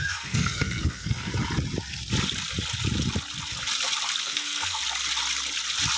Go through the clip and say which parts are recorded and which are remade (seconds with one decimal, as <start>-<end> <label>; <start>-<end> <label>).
0.0-1.3 remade; 1.3-4.2 recorded; 4.2-4.8 remade; 4.8-6.0 recorded